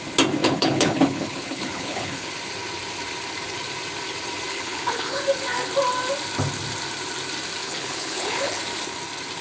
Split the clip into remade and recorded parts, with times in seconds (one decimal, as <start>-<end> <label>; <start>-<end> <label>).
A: 0.0-0.4 recorded; 0.4-2.3 remade; 2.3-4.5 recorded; 4.5-5.2 remade; 5.2-7.6 recorded; 7.6-8.6 remade; 8.6-9.4 recorded